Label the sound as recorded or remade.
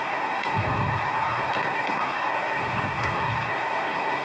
remade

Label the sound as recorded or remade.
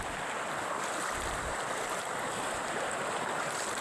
recorded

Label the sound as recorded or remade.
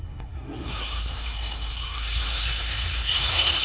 remade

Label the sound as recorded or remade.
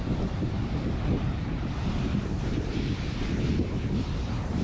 recorded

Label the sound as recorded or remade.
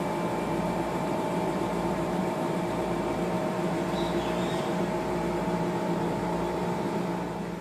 remade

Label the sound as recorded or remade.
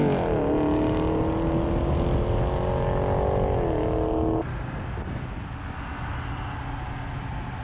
recorded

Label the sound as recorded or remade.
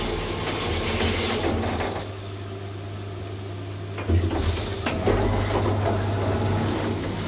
recorded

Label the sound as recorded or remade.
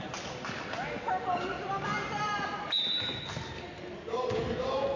recorded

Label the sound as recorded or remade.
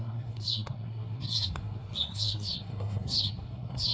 remade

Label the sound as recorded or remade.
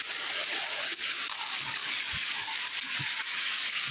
remade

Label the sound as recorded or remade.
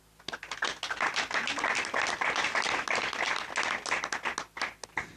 recorded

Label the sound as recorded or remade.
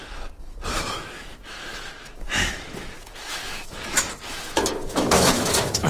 remade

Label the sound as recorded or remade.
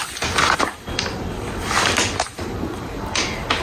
recorded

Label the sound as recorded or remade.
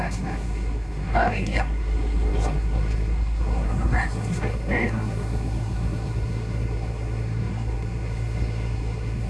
remade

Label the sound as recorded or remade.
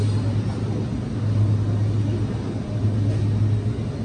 recorded